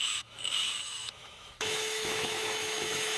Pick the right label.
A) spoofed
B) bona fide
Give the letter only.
A